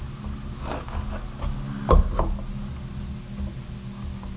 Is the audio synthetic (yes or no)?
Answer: no